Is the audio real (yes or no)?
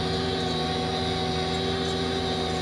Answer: yes